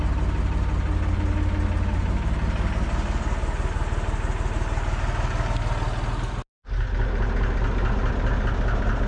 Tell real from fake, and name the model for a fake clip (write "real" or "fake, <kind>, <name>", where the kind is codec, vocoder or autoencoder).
real